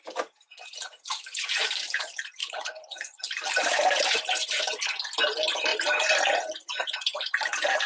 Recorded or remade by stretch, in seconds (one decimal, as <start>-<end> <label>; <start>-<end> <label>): 0.0-1.1 recorded; 1.1-1.6 remade; 1.6-2.4 recorded; 2.4-4.9 remade; 4.9-5.7 recorded; 5.7-7.2 remade; 7.2-7.9 recorded